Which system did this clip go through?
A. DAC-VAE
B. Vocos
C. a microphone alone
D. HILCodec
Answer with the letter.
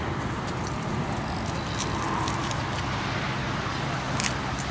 C